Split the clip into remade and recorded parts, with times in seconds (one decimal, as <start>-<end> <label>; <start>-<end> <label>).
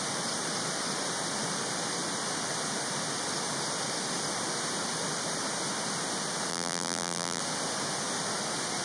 0.0-6.5 recorded; 6.5-7.4 remade; 7.4-8.8 recorded